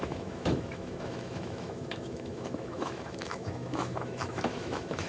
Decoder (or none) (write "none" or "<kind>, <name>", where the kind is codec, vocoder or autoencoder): autoencoder, DAC-VAE